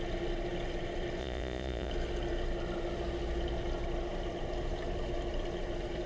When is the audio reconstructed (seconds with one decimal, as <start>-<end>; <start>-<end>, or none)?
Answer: 1.2-1.9